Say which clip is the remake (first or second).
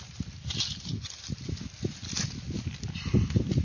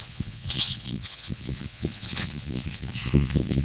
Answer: second